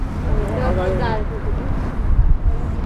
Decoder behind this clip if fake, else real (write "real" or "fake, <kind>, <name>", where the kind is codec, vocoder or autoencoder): real